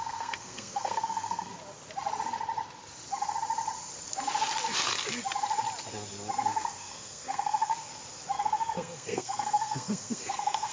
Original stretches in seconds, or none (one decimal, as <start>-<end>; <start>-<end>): 1.5-6.5; 7.9-8.4

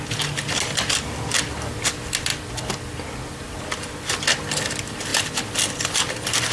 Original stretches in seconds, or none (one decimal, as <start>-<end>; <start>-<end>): 0.0-6.5

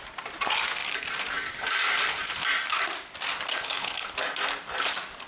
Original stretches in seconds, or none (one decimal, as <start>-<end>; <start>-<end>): 0.0-3.5; 4.1-5.3